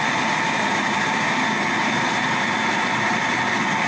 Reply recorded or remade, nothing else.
recorded